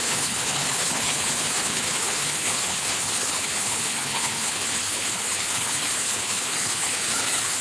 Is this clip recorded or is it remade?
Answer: remade